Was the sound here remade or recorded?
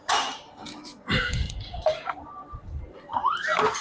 remade